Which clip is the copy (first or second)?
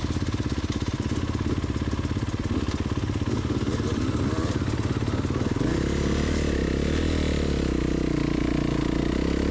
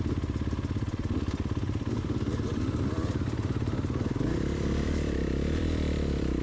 second